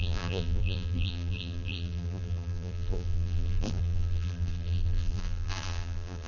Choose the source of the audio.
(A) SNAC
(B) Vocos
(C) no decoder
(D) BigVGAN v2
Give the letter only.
D